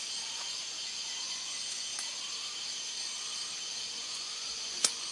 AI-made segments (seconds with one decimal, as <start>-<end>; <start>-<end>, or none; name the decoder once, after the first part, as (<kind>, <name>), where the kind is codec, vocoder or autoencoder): 0.0-1.9 (vocoder, Vocos); 3.8-5.1